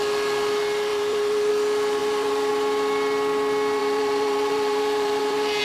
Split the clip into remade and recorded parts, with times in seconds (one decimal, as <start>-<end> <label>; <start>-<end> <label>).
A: 0.0-0.9 recorded; 0.9-1.5 remade; 1.5-2.0 recorded; 2.0-2.5 remade; 2.5-3.8 recorded; 3.8-5.6 remade